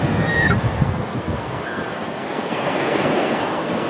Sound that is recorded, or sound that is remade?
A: remade